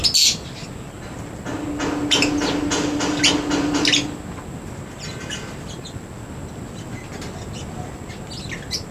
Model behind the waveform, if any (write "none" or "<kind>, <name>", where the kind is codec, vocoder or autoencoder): none